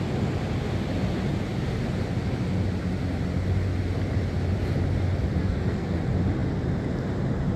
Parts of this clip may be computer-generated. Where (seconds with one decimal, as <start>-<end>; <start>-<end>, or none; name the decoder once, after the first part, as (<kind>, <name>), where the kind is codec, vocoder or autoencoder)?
5.4-6.0 (codec, SNAC)